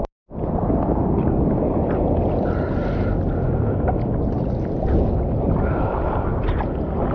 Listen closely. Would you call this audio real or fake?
real